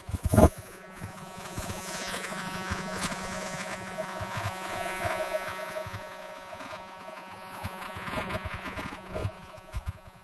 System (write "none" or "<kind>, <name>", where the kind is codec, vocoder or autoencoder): vocoder, Vocos